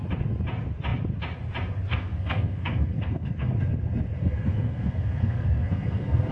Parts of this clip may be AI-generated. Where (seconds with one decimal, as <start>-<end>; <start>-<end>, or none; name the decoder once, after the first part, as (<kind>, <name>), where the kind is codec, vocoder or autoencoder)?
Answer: 1.9-3.5 (codec, SNAC); 4.2-6.3